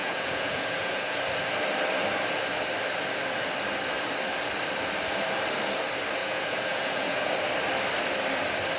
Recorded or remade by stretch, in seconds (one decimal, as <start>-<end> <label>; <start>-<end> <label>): 0.0-1.2 remade; 1.2-6.2 recorded; 6.2-7.3 remade; 7.3-8.8 recorded